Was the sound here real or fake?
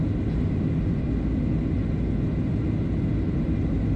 real